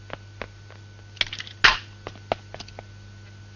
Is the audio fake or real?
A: real